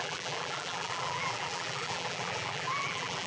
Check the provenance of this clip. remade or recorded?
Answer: remade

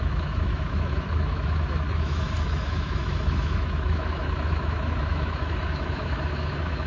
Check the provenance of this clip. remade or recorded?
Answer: remade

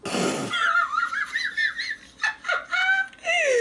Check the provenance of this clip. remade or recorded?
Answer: recorded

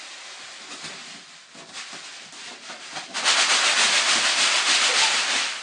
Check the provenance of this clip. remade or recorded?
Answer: remade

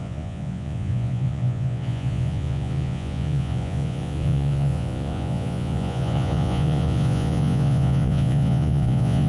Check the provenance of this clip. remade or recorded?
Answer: remade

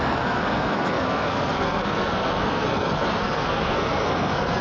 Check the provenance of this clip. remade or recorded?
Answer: remade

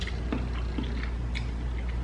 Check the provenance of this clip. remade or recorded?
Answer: recorded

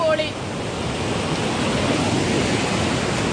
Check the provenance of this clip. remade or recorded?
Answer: recorded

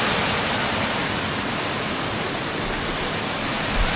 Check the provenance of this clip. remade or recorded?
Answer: recorded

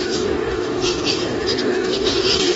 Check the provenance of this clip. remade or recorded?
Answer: remade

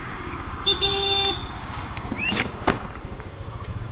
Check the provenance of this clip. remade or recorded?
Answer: remade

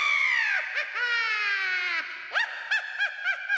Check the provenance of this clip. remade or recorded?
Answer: recorded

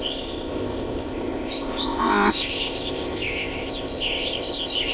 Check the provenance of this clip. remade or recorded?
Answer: remade